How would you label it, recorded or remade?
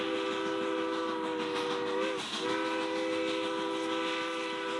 recorded